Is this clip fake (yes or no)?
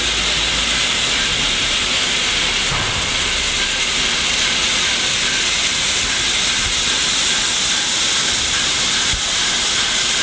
no